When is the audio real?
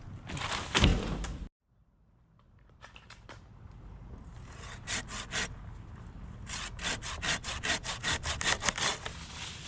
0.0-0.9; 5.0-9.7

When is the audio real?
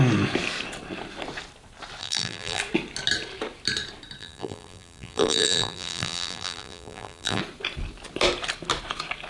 0.0-2.0; 2.6-4.2; 7.4-9.3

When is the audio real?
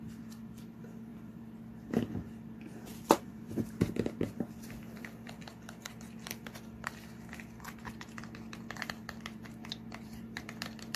0.0-1.1; 1.7-2.9; 5.3-9.0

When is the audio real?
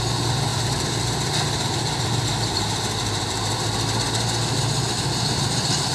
0.0-0.5; 4.0-5.9